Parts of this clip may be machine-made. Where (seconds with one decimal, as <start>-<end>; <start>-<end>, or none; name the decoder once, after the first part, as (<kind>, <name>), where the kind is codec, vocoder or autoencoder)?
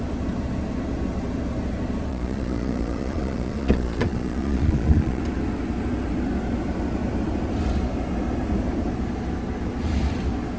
2.1-5.2 (vocoder, Vocos)